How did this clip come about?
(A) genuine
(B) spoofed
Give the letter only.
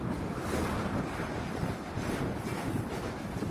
B